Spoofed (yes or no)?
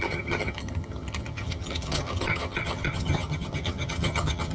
yes